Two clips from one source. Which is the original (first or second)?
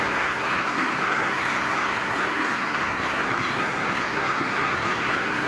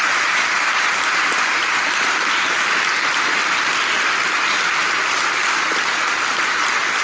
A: second